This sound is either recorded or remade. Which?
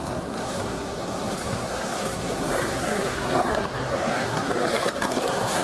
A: remade